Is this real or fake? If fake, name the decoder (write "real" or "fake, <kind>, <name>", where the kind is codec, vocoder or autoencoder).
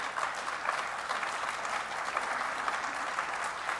fake, vocoder, BigVGAN v2